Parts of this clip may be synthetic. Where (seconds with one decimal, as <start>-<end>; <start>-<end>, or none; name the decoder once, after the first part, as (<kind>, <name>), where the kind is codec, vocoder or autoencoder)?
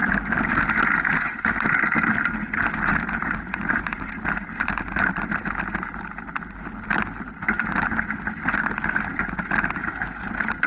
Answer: 2.9-4.1 (vocoder, BigVGAN v2)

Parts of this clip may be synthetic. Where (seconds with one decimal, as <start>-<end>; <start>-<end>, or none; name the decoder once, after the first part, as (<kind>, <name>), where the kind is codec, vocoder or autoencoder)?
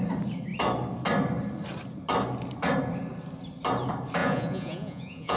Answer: 4.2-5.4 (vocoder, Vocos)